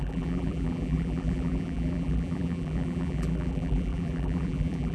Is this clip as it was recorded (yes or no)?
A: no